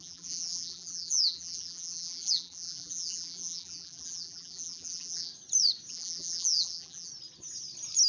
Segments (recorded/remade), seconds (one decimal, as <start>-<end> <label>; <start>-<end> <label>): 0.0-5.3 remade; 5.3-5.9 recorded; 5.9-7.1 remade; 7.1-8.1 recorded